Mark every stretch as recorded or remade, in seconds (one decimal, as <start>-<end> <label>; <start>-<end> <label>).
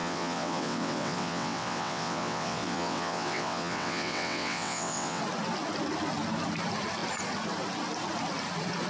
0.0-5.2 remade; 5.2-8.9 recorded